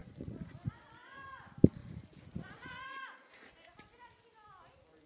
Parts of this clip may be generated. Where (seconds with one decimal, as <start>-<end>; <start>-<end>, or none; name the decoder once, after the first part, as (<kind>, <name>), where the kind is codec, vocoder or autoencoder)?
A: 0.0-0.5 (vocoder, Vocos); 1.8-3.5